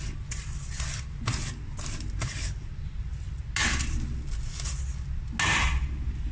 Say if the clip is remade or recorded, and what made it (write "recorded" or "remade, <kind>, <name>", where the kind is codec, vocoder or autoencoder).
recorded